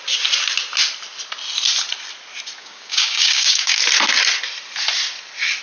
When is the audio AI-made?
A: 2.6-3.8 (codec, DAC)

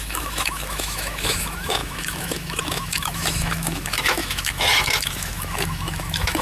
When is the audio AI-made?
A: 0.0-6.4 (autoencoder, DAC-VAE)

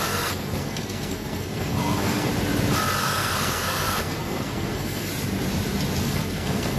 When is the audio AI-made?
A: 0.0-2.3 (codec, SNAC); 3.0-5.1; 6.0-6.8

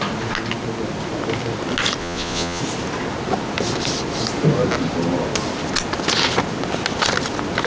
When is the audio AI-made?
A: 2.0-2.6 (vocoder, Vocos)

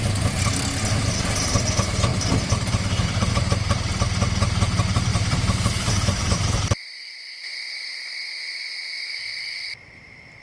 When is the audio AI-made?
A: 2.1-3.3 (vocoder, BigVGAN v2); 5.1-8.2

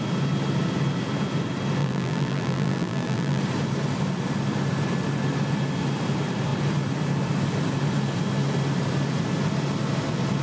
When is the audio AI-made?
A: 1.8-3.4 (vocoder, BigVGAN v2)

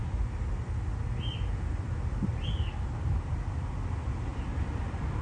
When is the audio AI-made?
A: 4.3-5.2 (vocoder, BigVGAN v2)

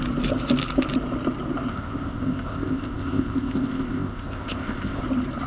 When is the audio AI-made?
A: 1.7-5.0 (codec, ZipCodec)